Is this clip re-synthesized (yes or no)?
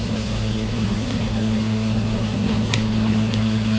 yes